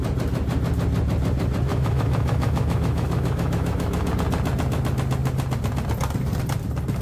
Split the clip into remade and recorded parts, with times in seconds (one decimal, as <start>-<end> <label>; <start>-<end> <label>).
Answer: 0.0-1.7 recorded; 1.7-4.1 remade; 4.1-7.0 recorded